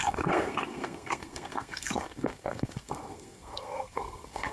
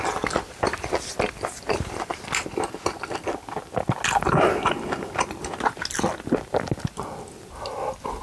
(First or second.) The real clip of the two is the second